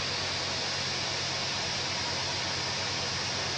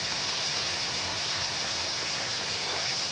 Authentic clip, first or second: first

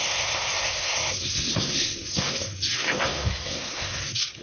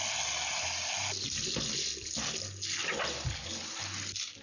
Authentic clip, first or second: second